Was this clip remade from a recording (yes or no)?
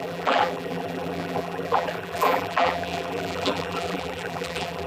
yes